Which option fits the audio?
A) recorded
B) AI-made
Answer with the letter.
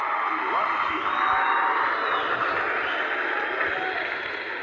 A